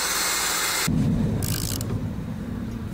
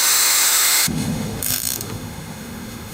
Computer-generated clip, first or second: second